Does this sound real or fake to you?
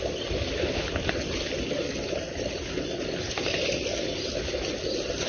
real